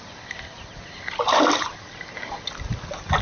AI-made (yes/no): no